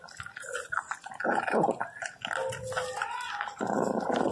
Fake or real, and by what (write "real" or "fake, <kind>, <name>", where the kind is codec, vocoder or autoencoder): real